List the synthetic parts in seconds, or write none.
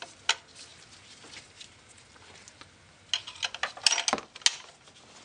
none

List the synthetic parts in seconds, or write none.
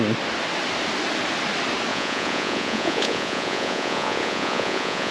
1.9-5.1 (vocoder, Vocos)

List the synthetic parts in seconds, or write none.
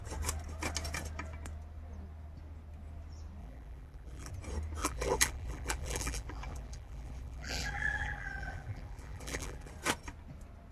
3.4-4.3 (vocoder, BigVGAN v2); 4.8-9.7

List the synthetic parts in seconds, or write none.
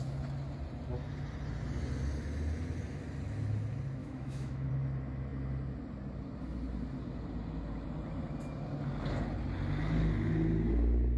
4.0-4.7 (autoencoder, DAC-VAE)